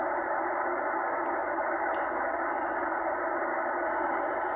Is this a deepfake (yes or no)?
no